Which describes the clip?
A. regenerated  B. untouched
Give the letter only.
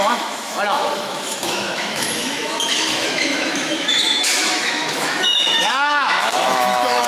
A